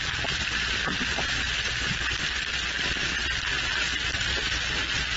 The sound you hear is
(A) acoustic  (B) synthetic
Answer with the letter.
B